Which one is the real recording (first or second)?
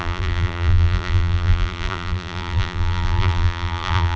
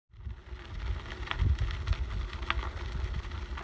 second